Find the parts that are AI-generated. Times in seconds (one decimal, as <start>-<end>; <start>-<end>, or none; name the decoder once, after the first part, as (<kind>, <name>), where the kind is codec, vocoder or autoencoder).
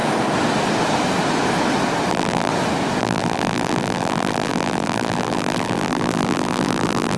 2.1-2.5 (vocoder, BigVGAN v2); 3.0-7.2